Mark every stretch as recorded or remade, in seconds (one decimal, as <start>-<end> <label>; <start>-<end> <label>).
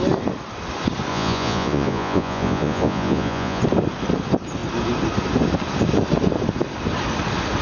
0.0-1.1 recorded; 1.1-3.6 remade; 3.6-7.6 recorded